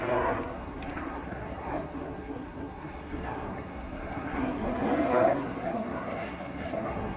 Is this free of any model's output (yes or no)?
no